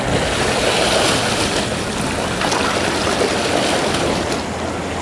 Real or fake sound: real